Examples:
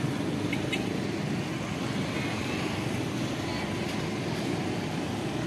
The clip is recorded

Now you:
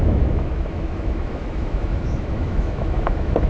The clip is remade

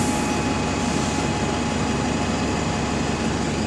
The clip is recorded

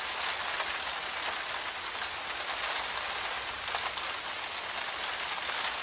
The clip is recorded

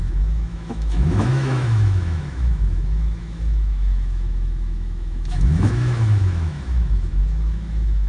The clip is remade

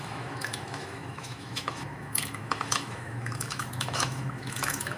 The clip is remade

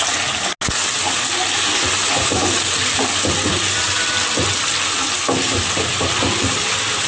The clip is recorded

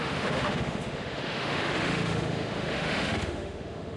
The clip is remade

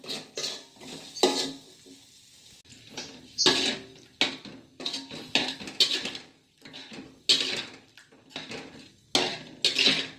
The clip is recorded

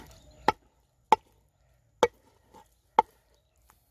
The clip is recorded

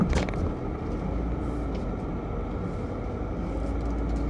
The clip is recorded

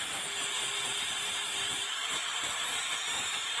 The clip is recorded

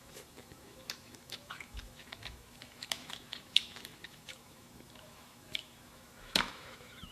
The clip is remade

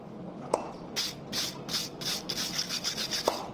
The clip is recorded